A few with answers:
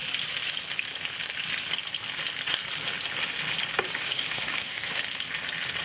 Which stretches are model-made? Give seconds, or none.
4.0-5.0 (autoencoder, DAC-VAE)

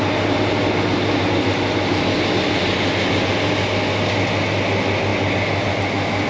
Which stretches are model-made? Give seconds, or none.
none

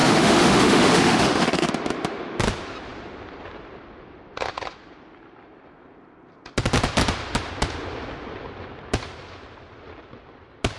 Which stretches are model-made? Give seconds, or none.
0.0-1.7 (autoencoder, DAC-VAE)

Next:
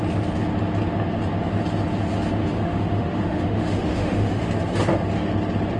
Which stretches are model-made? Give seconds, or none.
2.5-4.4 (autoencoder, DAC-VAE)

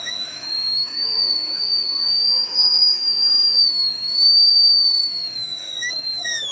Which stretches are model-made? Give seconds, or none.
0.0-6.5 (autoencoder, DAC-VAE)